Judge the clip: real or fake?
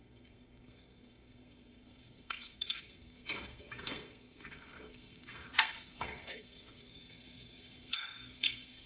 fake